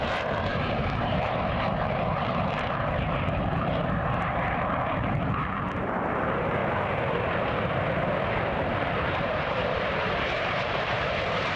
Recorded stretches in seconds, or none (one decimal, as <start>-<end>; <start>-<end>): 6.6-8.6